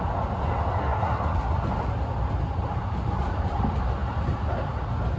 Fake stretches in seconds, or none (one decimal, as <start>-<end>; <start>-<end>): 0.8-1.5